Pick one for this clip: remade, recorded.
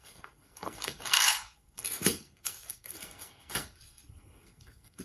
remade